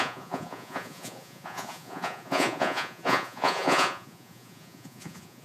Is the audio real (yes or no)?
no